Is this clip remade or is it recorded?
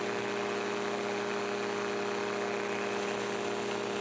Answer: recorded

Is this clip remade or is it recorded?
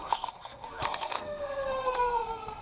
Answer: remade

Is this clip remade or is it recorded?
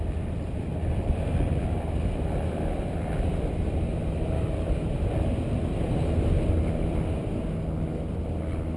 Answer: recorded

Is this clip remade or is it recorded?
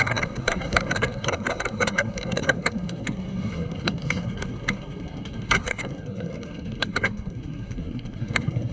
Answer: remade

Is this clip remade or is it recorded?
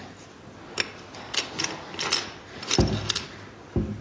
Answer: recorded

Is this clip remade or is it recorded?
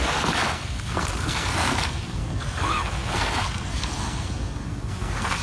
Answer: remade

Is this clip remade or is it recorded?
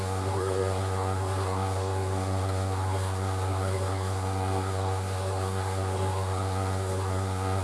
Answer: remade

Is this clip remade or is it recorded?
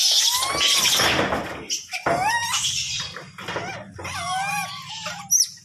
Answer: recorded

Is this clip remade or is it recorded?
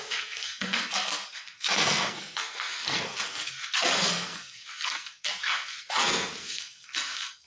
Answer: remade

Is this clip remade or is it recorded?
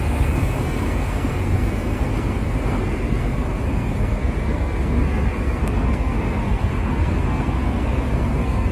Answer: remade